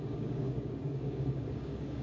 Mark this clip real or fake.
fake